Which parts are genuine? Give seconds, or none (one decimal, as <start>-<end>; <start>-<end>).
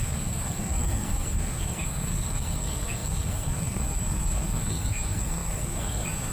none